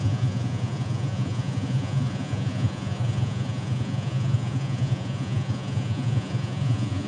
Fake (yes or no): yes